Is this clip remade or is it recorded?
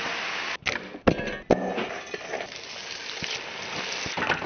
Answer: recorded